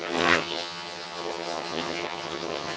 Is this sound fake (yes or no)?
yes